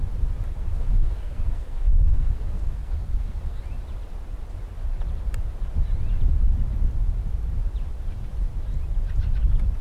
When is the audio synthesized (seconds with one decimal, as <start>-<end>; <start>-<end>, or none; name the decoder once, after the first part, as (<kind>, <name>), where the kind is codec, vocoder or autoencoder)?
0.5-3.6 (codec, SNAC)